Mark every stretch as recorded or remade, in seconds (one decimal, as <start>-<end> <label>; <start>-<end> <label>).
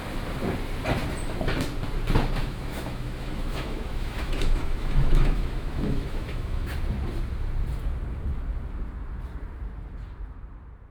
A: 0.0-2.4 recorded; 2.4-6.7 remade; 6.7-10.9 recorded